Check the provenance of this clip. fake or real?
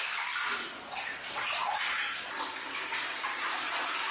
real